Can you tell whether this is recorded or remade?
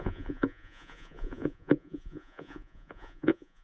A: remade